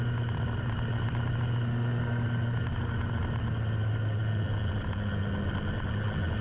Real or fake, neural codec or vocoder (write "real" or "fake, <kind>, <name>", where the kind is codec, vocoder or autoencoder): real